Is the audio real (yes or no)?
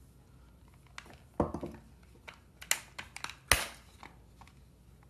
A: yes